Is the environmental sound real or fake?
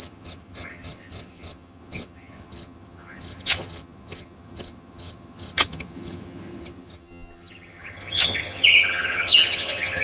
fake